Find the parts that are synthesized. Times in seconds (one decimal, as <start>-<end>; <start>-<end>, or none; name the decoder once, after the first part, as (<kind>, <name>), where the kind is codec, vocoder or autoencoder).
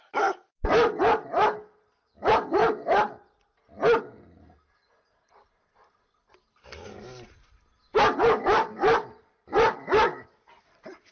none